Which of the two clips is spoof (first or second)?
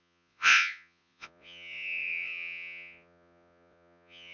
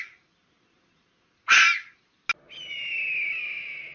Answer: first